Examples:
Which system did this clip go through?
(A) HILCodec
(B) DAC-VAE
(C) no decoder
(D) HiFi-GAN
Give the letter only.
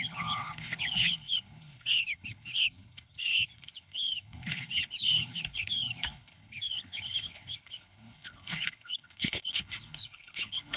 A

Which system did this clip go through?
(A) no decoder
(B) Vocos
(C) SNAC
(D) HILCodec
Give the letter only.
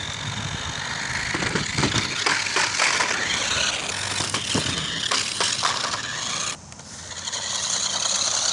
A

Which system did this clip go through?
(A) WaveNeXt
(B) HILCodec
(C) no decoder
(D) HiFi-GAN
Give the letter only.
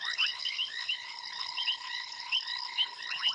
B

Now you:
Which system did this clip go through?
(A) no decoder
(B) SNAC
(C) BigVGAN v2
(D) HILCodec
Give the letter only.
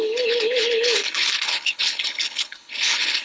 D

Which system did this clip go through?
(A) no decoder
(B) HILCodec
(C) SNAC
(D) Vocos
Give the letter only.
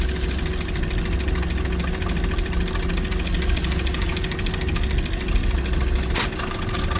A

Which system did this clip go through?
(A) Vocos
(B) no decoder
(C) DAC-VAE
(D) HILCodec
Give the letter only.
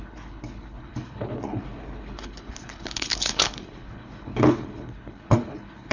D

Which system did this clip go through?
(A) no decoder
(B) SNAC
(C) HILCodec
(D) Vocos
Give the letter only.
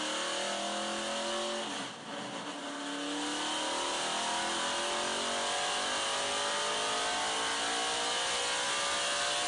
A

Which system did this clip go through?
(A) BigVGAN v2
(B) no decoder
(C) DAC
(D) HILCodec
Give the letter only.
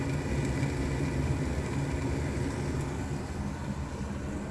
B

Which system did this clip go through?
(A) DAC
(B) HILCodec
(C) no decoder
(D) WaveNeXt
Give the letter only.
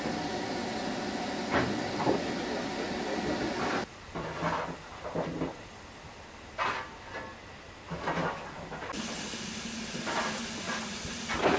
C